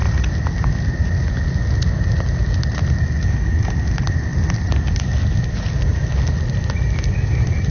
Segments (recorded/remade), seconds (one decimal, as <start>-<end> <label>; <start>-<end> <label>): 0.0-7.7 recorded